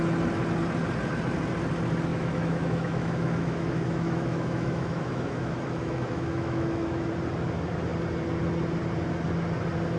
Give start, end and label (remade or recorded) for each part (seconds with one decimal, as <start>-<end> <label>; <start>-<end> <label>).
0.0-2.1 recorded; 2.1-7.1 remade; 7.1-10.0 recorded